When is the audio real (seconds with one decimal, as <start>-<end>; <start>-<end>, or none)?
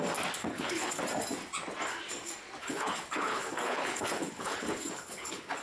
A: 0.0-0.4; 1.0-2.6